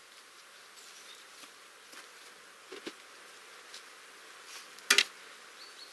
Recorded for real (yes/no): yes